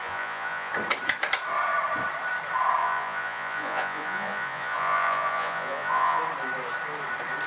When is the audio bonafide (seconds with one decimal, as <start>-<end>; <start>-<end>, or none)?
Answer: 0.7-2.8; 6.2-7.5